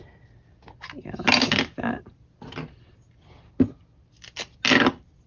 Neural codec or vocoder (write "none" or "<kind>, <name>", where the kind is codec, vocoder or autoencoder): none